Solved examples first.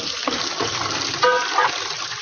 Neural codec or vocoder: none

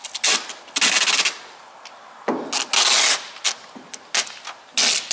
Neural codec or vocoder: none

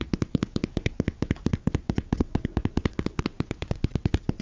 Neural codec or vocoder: vocoder, WaveNeXt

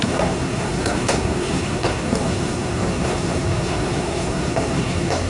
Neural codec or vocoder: codec, SNAC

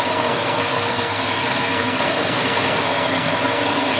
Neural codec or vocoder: codec, SNAC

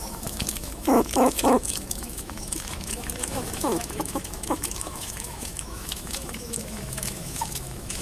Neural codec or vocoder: autoencoder, DAC-VAE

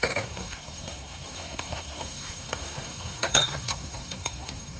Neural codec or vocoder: codec, SNAC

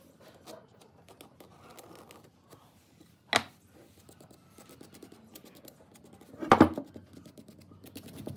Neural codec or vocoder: none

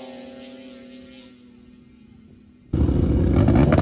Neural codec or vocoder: none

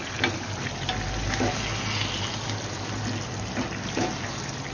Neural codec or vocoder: none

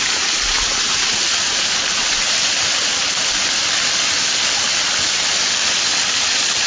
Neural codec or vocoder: none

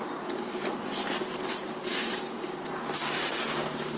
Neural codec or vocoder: none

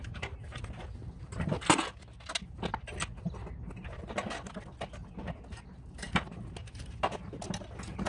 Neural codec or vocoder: none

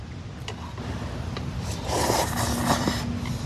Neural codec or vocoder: none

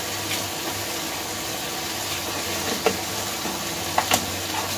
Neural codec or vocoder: none